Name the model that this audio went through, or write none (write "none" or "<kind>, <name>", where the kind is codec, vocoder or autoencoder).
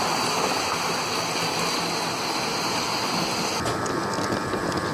none